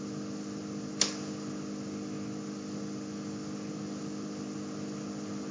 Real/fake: real